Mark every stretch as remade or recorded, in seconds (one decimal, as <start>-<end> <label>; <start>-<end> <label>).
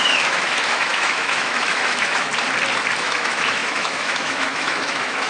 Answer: 0.0-2.3 remade; 2.3-3.0 recorded; 3.0-5.3 remade